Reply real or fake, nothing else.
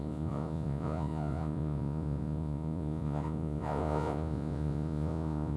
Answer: fake